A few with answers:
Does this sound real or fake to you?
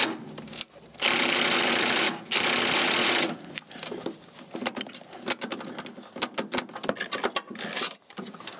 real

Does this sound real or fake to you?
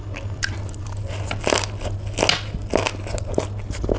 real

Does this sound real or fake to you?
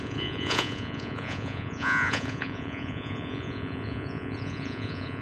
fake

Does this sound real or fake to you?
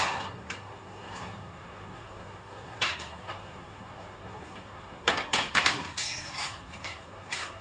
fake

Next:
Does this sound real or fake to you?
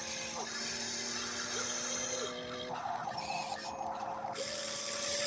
real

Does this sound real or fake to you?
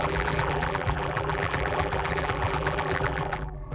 fake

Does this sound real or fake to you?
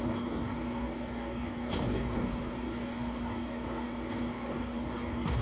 fake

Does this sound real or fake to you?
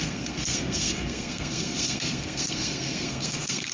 fake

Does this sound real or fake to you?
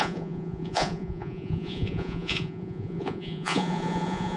fake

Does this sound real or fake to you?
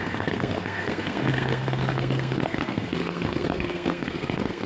fake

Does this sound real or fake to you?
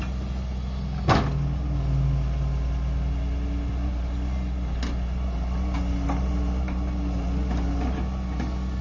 real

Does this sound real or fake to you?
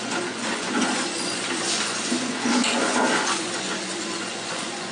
fake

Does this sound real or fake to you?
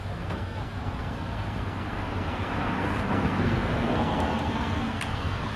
fake